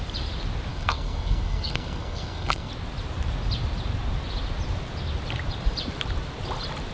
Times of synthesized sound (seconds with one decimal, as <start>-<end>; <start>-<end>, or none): 0.7-2.7